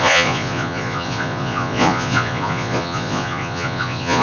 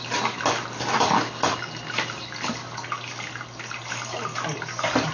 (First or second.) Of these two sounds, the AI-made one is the first